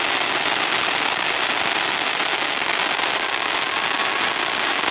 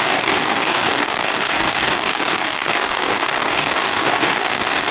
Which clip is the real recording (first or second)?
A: first